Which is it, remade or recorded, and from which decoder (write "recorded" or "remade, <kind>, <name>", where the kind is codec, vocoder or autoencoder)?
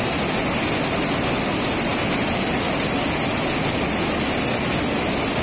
recorded